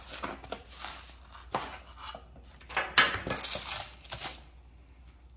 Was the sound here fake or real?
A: real